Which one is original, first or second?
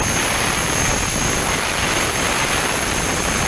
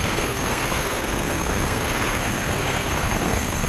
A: first